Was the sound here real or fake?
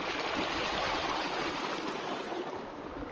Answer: real